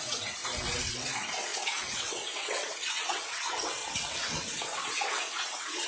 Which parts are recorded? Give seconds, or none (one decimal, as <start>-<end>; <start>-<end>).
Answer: 0.4-0.9